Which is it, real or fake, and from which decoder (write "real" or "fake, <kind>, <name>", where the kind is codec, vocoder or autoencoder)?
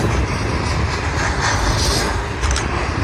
real